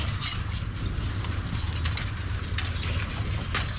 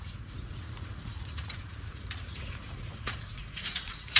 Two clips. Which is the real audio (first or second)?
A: first